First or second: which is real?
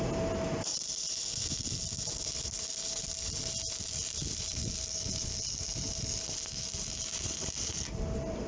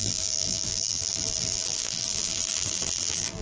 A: first